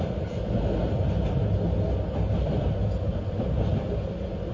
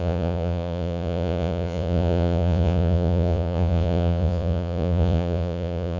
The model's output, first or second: second